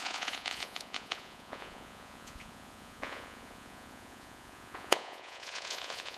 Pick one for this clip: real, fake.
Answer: fake